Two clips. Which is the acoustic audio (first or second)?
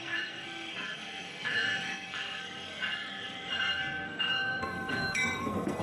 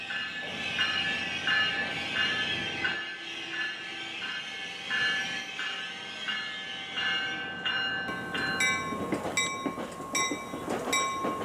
second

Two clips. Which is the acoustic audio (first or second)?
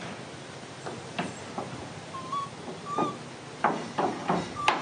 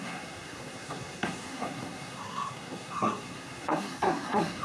first